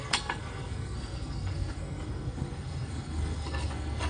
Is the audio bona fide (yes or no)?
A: no